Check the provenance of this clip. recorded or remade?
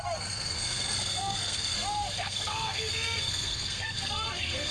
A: remade